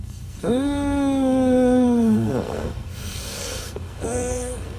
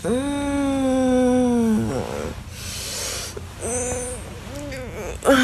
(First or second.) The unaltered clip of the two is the second